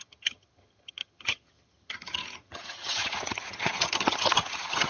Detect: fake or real fake